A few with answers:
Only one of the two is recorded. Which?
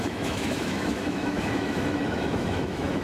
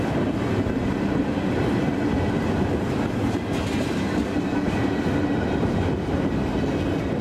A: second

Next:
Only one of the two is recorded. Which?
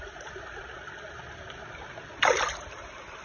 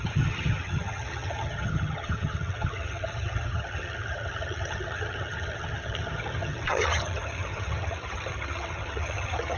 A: first